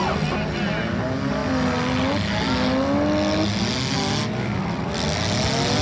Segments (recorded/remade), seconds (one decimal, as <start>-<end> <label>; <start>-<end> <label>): 0.0-5.8 recorded